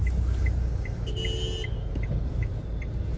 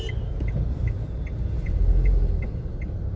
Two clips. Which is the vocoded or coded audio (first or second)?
second